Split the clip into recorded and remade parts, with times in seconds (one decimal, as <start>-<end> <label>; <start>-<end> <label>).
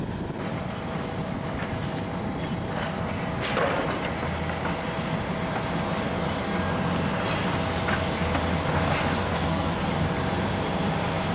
0.0-9.2 recorded; 9.2-9.9 remade; 9.9-11.3 recorded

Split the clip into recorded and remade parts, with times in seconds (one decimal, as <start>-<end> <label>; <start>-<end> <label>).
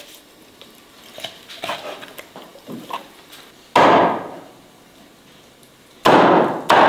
0.0-6.9 recorded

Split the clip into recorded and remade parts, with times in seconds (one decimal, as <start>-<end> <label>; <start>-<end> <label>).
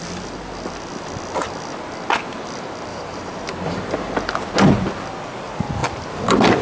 0.0-2.9 recorded; 2.9-4.1 remade; 4.1-6.6 recorded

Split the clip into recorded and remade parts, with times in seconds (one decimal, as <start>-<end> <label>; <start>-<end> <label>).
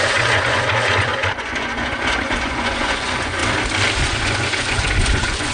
0.0-3.4 remade; 3.4-4.0 recorded; 4.0-5.5 remade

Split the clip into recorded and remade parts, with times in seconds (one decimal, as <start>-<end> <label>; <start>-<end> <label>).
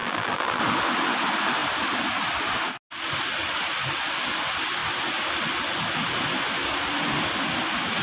0.0-0.6 remade; 0.6-8.0 recorded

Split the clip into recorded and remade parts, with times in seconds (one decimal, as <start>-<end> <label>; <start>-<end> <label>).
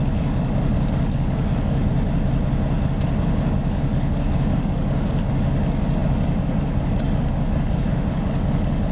0.0-1.9 remade; 1.9-3.5 recorded; 3.5-8.9 remade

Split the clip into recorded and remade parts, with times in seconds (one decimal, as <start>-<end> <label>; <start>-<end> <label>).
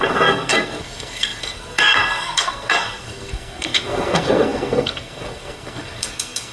0.0-6.5 remade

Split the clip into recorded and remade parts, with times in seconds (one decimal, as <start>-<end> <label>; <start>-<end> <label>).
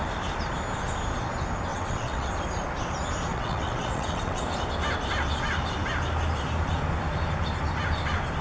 0.0-1.7 recorded; 1.7-2.3 remade; 2.3-3.3 recorded; 3.3-4.4 remade; 4.4-8.4 recorded